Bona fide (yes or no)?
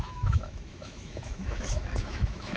no